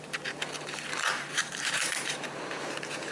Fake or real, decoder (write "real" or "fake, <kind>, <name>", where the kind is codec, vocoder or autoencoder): fake, vocoder, BigVGAN v2